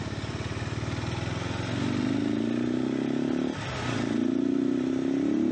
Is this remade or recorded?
recorded